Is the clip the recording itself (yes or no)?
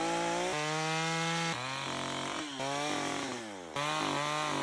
yes